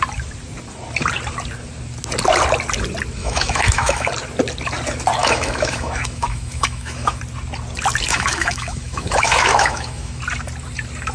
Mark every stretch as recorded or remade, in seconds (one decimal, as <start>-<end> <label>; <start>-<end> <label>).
0.0-3.2 recorded; 3.2-4.1 remade; 4.1-5.2 recorded; 5.2-7.2 remade; 7.2-8.1 recorded; 8.1-10.2 remade; 10.2-11.1 recorded